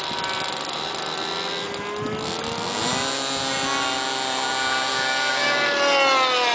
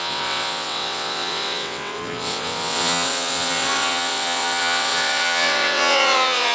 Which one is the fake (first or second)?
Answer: second